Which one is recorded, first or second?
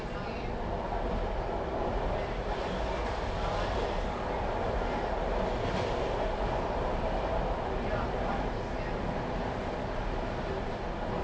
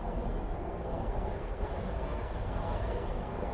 first